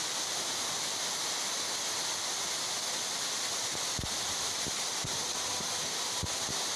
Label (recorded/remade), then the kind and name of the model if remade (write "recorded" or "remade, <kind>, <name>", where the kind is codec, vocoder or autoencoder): recorded